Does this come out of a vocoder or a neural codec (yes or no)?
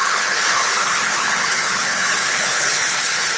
yes